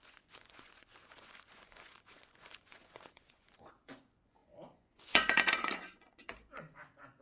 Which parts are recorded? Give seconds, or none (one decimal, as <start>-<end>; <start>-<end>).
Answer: none